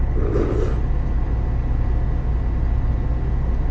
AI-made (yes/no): no